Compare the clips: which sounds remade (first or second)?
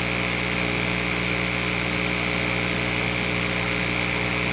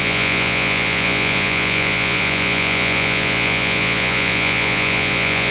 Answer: second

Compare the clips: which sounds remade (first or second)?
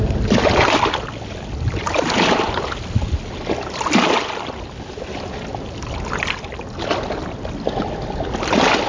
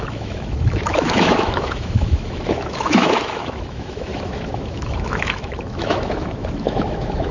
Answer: second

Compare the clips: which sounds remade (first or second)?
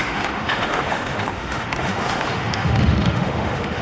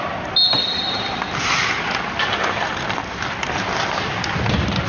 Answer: first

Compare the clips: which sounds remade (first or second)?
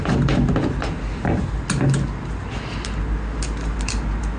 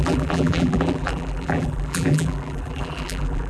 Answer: second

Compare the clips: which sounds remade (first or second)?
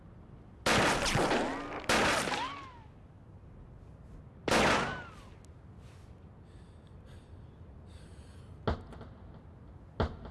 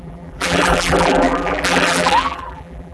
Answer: second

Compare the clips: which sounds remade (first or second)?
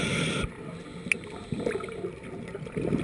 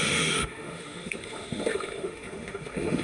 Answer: second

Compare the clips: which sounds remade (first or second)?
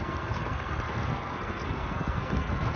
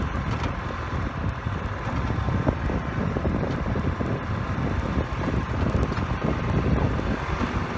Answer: first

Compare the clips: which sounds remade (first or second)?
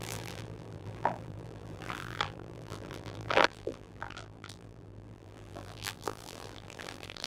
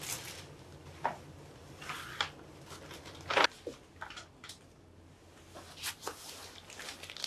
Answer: first